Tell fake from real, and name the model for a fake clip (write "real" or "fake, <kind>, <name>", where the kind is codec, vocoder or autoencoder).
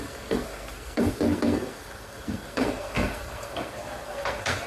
fake, codec, SNAC